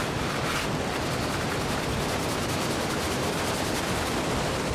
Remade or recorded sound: recorded